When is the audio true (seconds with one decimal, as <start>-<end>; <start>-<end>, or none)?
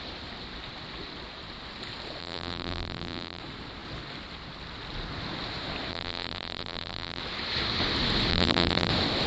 0.0-2.2; 3.4-5.9; 7.2-8.3; 8.9-9.3